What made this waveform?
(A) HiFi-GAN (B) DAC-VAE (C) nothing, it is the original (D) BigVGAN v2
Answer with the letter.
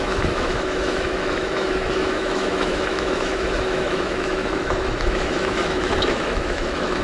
B